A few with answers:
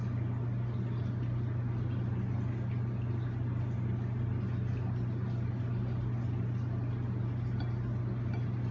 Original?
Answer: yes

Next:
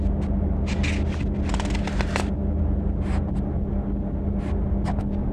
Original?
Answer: yes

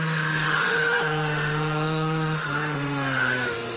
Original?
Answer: no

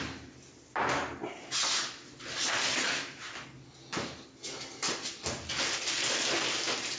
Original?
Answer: yes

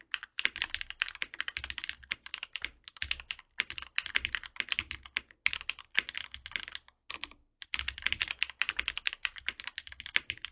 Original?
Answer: yes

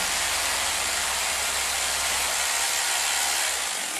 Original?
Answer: yes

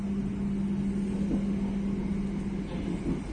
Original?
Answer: yes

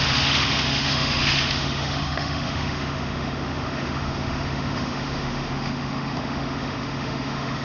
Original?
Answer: no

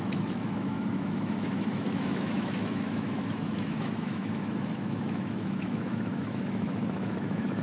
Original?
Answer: no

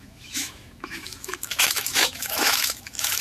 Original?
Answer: no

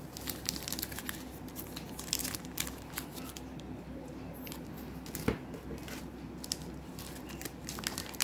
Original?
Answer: yes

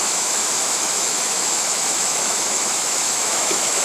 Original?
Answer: no